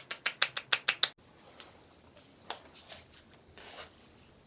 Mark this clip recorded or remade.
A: recorded